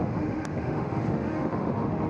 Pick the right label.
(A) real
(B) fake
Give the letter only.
B